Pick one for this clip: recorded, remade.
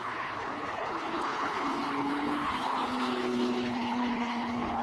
remade